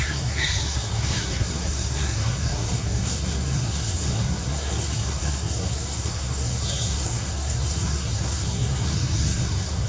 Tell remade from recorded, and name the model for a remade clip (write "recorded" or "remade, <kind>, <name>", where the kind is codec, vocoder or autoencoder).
remade, codec, SNAC